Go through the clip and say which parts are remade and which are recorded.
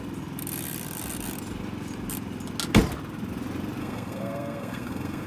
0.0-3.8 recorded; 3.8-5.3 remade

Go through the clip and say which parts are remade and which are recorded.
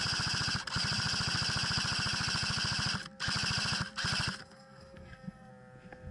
0.0-4.4 recorded; 4.4-5.5 remade; 5.5-6.1 recorded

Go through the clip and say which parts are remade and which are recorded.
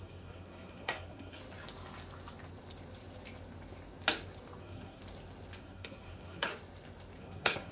0.0-1.4 remade; 1.4-4.6 recorded; 4.6-5.0 remade; 5.0-5.6 recorded; 5.6-6.5 remade; 6.5-7.2 recorded; 7.2-7.7 remade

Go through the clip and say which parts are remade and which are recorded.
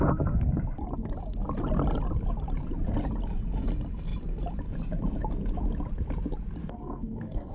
0.0-6.6 recorded; 6.6-7.5 remade